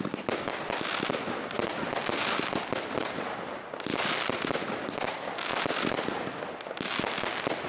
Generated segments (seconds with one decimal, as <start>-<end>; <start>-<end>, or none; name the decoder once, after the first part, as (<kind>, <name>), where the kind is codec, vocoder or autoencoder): none